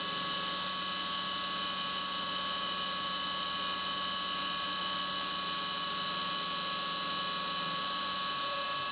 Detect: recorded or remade recorded